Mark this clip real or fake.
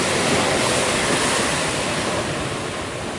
real